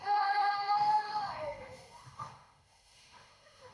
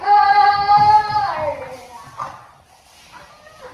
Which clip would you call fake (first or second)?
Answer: first